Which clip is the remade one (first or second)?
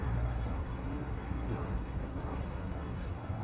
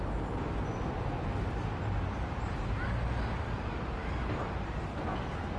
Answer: first